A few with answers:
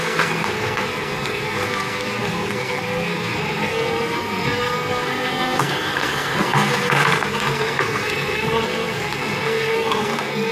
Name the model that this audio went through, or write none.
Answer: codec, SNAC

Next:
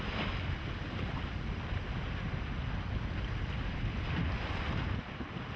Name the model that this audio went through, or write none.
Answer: none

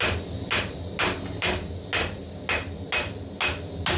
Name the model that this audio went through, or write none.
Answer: none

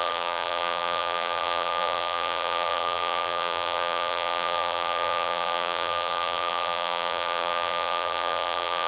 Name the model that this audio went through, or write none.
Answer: vocoder, BigVGAN v2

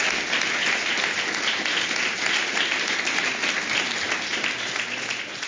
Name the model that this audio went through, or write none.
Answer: none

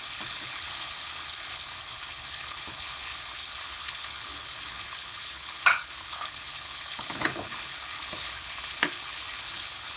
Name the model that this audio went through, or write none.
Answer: codec, HILCodec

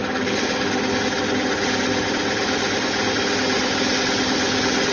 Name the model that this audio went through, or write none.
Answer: none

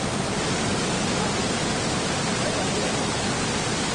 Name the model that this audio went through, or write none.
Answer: none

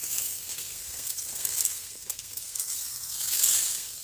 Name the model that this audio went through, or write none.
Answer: codec, SNAC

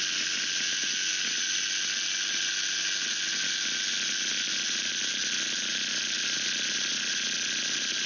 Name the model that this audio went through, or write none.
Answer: none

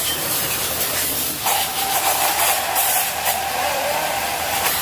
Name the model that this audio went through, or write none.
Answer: vocoder, BigVGAN v2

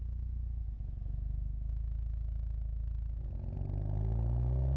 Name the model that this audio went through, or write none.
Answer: none